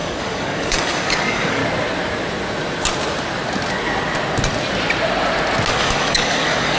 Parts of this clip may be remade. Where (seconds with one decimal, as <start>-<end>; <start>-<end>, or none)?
0.0-1.6; 5.7-6.8